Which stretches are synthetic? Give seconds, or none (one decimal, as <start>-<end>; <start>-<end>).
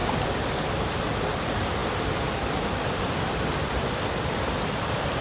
none